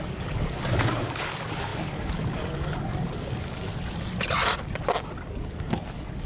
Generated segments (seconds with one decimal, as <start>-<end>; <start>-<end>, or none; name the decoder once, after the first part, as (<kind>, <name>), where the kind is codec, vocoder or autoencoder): 0.0-3.7 (codec, DAC); 5.3-6.3